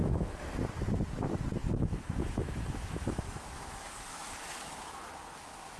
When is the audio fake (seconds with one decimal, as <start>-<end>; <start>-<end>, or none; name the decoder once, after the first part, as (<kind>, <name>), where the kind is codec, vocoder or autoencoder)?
0.0-0.6 (autoencoder, DAC-VAE); 1.6-5.1

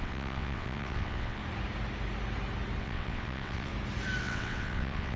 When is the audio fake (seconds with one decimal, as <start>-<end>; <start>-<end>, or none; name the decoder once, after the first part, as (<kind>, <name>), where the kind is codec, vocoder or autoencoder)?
0.0-1.4 (vocoder, WaveNeXt); 2.8-3.7; 4.2-5.2

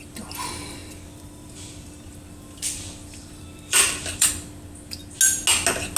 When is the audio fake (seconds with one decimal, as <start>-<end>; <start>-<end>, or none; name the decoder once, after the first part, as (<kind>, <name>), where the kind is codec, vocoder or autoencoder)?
0.8-4.3 (vocoder, BigVGAN v2)

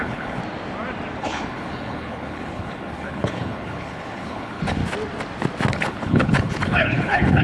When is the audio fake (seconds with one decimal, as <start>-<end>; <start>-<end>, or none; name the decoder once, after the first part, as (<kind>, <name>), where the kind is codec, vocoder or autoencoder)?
0.0-0.4 (codec, HILCodec); 1.2-4.8; 5.7-7.4

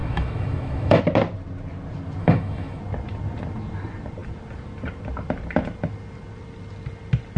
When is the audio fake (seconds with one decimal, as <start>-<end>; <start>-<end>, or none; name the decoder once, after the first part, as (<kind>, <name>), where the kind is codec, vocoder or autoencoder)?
0.0-1.0 (autoencoder, DAC-VAE); 2.2-2.8

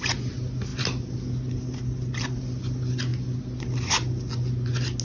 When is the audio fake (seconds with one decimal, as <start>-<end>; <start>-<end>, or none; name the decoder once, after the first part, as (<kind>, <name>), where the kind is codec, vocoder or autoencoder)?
none

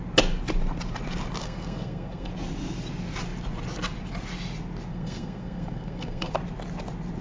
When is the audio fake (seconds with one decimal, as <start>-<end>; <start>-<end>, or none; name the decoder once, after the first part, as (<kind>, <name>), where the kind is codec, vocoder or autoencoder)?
1.4-2.3 (codec, SNAC); 4.9-6.3